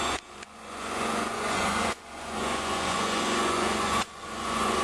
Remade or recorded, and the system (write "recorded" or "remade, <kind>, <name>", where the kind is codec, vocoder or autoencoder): remade, vocoder, Vocos